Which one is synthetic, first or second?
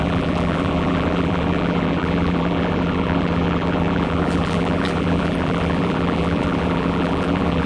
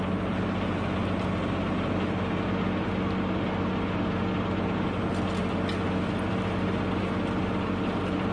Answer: first